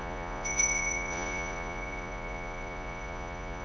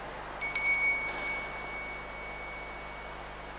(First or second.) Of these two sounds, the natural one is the second